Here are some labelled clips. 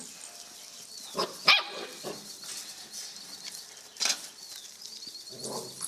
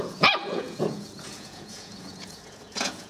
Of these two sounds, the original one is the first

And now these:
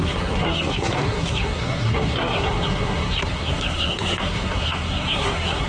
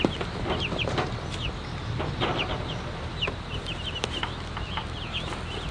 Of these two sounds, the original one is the second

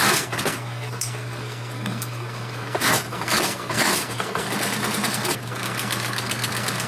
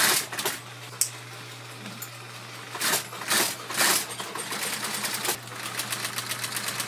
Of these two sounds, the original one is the second